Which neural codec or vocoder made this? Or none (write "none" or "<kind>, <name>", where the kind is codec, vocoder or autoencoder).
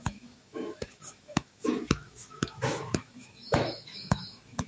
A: autoencoder, DAC-VAE